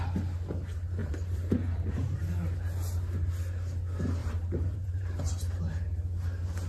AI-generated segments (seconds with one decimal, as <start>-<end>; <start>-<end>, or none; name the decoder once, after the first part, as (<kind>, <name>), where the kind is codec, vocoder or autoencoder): 1.0-2.2 (vocoder, BigVGAN v2); 4.2-5.1

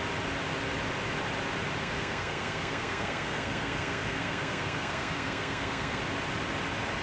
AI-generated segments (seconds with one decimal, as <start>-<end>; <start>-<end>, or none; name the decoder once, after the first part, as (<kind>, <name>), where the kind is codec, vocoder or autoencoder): 1.8-6.0 (codec, SNAC)

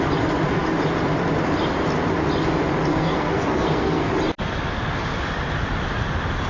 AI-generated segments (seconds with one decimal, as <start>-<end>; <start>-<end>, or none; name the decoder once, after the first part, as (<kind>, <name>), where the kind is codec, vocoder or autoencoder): 2.9-4.1 (codec, SNAC)

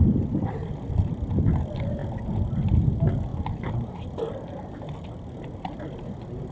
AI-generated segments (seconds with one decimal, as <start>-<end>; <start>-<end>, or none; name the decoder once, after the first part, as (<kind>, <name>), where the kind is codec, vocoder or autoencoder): 3.3-4.2 (vocoder, BigVGAN v2)

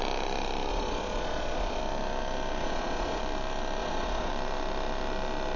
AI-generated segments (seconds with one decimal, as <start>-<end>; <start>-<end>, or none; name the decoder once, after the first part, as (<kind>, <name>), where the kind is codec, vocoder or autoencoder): 0.7-1.8 (vocoder, Vocos); 2.6-3.2; 3.8-4.3